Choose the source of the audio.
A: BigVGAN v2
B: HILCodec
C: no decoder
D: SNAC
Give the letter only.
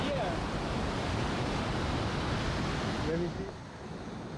C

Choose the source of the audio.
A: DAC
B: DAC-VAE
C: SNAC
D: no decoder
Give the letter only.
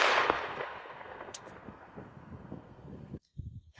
C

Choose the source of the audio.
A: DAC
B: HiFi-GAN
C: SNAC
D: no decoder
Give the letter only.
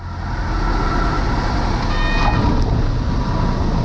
D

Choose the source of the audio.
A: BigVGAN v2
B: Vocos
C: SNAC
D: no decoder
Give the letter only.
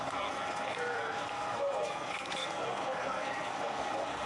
C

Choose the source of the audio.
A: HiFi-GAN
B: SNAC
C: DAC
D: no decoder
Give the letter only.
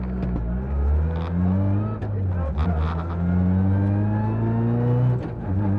D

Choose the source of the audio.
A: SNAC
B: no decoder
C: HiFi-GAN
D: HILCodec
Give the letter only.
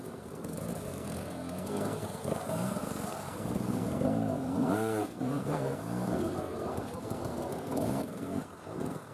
A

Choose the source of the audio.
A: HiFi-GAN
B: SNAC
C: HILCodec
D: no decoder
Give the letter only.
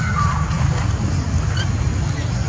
D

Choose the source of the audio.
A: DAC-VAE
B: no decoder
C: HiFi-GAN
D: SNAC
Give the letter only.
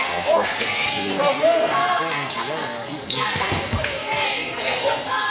D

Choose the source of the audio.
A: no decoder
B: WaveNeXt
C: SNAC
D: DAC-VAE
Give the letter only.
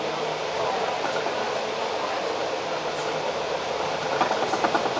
A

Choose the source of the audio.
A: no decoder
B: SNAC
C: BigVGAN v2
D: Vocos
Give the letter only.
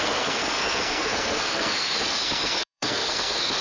B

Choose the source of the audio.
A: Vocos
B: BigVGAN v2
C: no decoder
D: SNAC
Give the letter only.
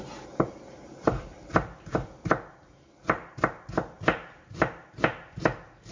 C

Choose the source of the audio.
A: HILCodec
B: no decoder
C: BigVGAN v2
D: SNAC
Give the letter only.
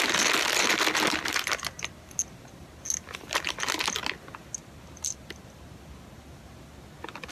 B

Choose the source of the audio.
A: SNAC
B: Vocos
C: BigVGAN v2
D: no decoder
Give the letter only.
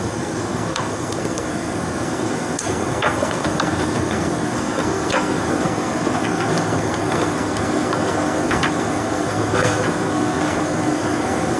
A